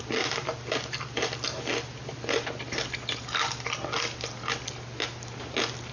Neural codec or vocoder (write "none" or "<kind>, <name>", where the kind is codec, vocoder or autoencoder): vocoder, BigVGAN v2